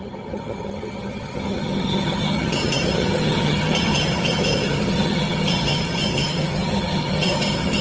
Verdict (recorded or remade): remade